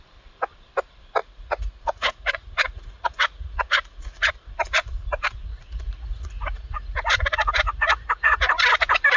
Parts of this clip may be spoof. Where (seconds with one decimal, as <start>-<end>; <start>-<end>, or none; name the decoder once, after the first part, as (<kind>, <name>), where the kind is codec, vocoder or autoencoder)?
1.2-4.3 (vocoder, Vocos); 5.4-8.4